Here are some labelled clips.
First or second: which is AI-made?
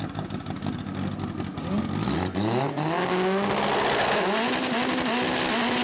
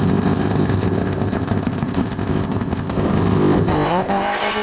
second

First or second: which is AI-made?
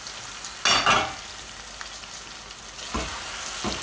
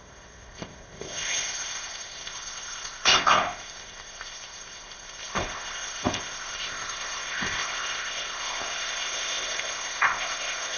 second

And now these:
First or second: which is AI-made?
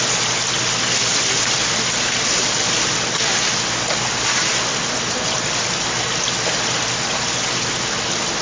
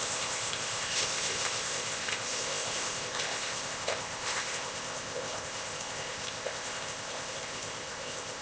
second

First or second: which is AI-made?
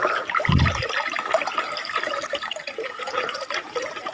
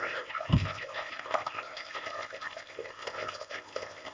second